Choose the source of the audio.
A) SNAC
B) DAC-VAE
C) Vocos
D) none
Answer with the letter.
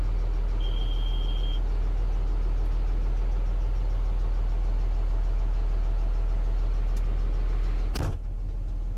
D